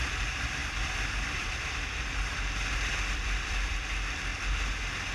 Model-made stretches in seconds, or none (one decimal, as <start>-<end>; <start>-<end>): 0.0-4.3

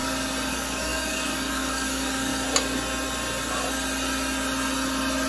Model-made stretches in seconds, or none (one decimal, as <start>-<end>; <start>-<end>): 0.5-2.3

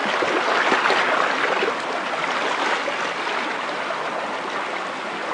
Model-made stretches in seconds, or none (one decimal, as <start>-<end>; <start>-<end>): 1.7-5.3

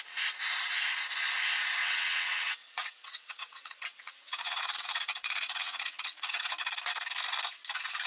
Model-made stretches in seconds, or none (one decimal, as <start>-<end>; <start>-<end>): 1.8-6.5

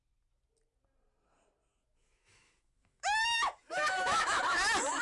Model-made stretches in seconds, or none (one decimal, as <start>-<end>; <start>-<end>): 1.7-4.4

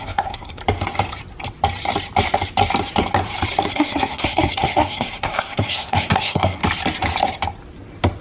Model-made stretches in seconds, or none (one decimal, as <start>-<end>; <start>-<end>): 0.0-0.6; 3.7-6.6